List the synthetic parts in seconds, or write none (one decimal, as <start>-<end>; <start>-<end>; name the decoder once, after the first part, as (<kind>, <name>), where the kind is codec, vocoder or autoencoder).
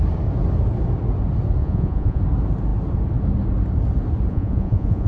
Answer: 1.6-2.2 (vocoder, Vocos); 4.3-5.1